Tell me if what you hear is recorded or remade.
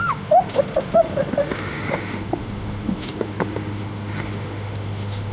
remade